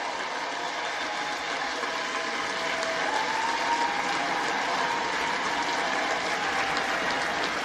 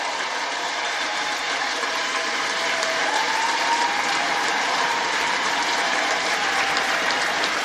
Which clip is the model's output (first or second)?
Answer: second